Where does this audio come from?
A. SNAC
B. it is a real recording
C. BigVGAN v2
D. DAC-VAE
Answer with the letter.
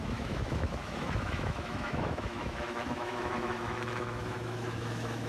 D